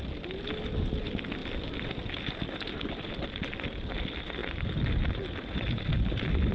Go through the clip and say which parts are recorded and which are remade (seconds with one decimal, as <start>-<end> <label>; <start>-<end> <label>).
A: 0.0-6.5 recorded